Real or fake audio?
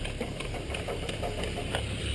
real